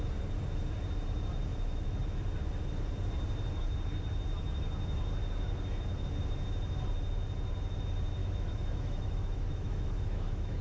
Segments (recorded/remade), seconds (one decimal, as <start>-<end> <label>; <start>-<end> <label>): 0.0-8.2 recorded; 8.2-10.6 remade